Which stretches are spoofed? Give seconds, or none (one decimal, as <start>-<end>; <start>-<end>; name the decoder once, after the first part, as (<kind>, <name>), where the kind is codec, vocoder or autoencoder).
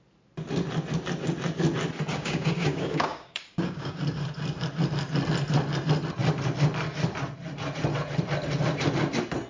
2.1-4.0 (codec, DAC)